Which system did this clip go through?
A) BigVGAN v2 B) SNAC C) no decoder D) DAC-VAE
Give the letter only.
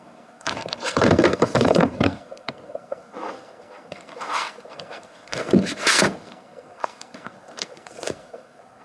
B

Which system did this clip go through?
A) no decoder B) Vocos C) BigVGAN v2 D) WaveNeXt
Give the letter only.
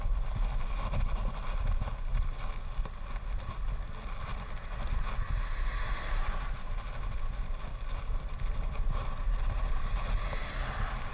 A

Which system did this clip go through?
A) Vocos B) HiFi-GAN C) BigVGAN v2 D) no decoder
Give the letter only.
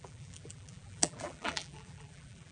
C